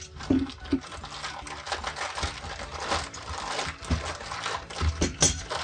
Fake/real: real